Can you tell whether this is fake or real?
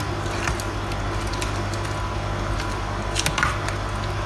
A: real